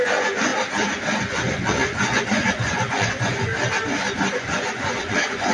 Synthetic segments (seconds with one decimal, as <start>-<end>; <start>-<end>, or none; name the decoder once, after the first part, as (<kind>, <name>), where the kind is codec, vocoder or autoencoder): 0.0-0.5 (vocoder, Vocos); 1.2-3.5; 4.3-5.5